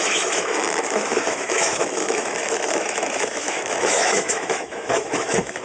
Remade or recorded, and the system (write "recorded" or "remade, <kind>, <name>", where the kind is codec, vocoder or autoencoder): remade, autoencoder, DAC-VAE